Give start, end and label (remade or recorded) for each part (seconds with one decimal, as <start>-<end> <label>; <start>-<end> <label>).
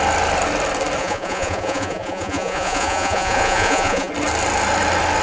0.0-1.0 recorded; 1.0-4.1 remade; 4.1-5.2 recorded